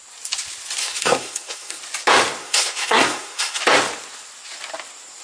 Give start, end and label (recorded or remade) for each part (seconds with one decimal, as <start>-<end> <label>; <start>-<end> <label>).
0.0-0.8 recorded; 0.8-1.8 remade; 1.8-2.4 recorded; 2.4-3.6 remade; 3.6-5.2 recorded